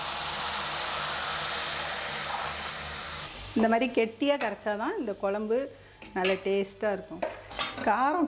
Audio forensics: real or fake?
real